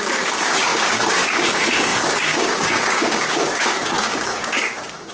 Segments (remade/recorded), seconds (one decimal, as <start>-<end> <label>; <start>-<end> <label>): 0.0-5.1 remade